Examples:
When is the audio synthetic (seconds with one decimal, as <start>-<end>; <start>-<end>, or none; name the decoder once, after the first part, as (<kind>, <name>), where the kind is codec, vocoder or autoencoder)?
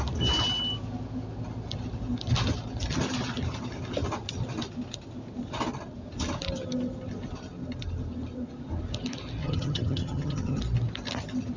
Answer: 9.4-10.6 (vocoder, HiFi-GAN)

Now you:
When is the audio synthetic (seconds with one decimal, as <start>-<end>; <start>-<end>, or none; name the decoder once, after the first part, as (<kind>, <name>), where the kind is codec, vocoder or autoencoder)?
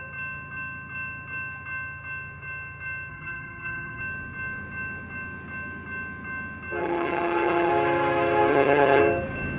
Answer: 3.1-4.0 (vocoder, HiFi-GAN); 6.8-7.7; 8.5-9.0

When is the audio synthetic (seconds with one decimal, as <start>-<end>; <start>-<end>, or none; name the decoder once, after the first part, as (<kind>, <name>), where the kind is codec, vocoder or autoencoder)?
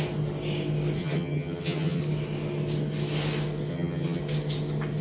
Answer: 1.0-2.0 (vocoder, HiFi-GAN); 3.7-4.2